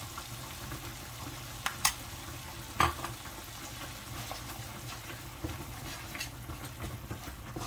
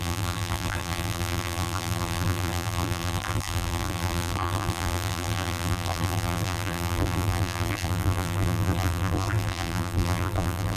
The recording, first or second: first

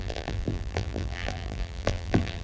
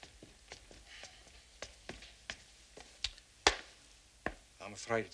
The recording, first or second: second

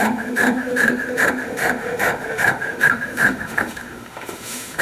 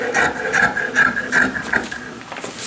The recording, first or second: second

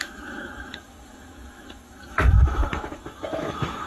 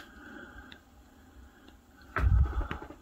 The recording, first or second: second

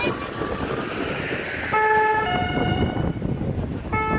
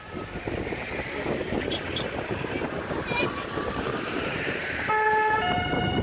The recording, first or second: first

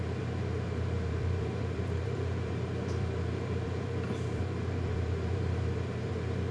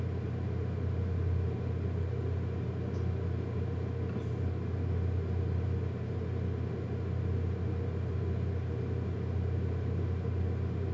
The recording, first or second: second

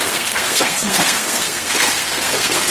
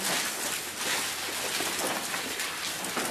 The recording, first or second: second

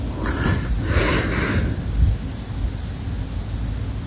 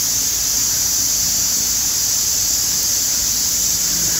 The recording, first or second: first